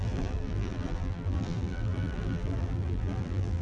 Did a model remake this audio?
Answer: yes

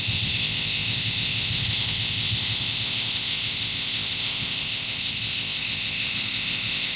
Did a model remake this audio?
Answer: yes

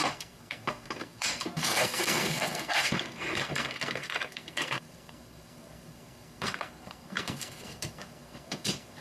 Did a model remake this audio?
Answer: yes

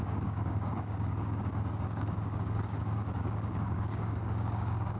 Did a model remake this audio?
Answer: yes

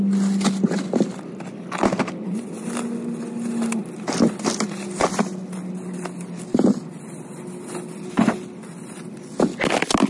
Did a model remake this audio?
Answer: no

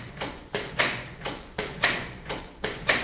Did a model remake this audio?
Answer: yes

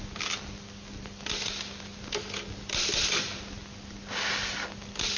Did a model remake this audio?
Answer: no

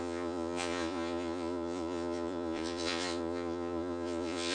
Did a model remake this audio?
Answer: yes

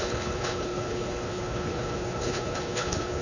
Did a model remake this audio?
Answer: yes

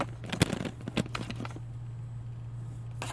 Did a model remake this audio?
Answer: no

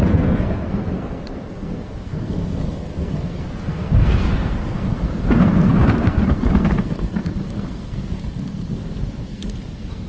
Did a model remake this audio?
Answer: yes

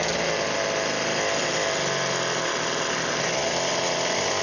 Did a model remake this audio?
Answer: no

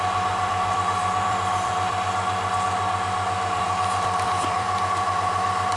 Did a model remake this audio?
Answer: yes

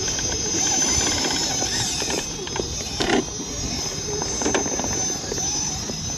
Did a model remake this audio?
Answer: no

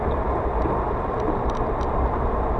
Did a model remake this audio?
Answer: no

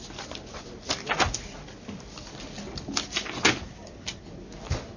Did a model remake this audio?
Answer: no